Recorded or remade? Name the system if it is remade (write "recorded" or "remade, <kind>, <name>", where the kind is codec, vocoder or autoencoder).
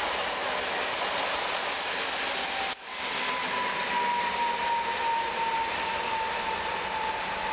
recorded